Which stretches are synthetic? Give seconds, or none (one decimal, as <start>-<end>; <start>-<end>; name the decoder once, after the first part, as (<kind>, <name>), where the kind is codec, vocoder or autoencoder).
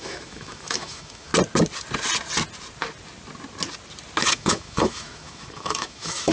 0.0-1.3 (autoencoder, DAC-VAE); 4.3-6.3